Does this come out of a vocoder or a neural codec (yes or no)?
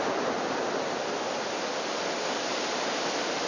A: no